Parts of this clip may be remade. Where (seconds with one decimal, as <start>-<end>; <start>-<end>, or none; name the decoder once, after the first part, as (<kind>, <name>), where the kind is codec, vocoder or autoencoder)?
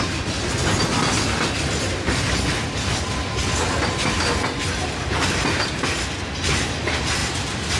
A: none